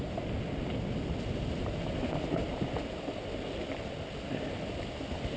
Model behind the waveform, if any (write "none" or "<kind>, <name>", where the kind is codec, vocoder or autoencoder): none